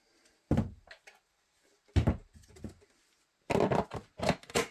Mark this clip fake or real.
real